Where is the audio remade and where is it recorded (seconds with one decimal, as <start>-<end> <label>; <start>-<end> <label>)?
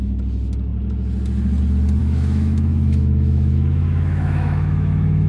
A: 0.0-2.0 recorded; 2.0-5.3 remade